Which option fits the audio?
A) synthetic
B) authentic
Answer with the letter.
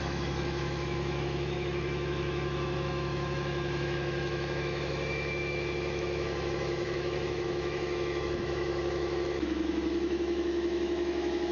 A